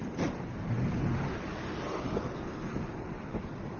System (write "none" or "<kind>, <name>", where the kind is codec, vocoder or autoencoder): none